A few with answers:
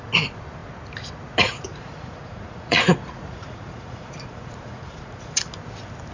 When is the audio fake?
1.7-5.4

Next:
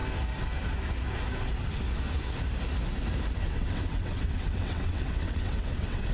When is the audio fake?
3.4-6.1

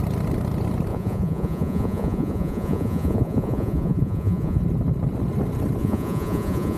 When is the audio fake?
0.9-4.6; 5.8-6.8

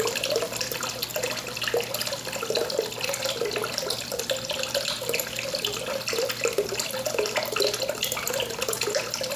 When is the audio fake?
none

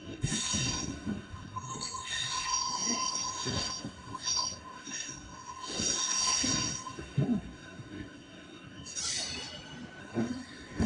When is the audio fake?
0.0-9.0; 10.0-10.9

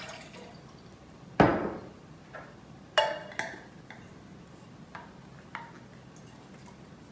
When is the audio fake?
none

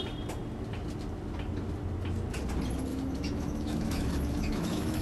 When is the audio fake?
2.9-5.0

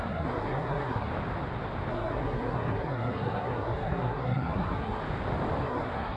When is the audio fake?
0.0-1.1; 1.9-5.0; 5.6-6.2